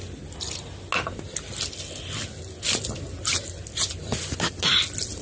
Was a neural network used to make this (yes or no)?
no